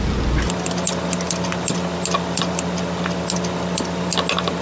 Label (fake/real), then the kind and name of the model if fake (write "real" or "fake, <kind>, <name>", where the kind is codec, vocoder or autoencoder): real